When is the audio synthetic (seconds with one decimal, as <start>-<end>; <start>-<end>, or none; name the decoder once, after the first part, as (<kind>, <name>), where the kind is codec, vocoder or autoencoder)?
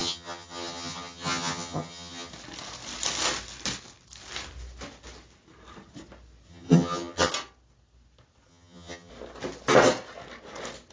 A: 0.0-2.3 (vocoder, HiFi-GAN); 6.5-7.3; 8.5-9.1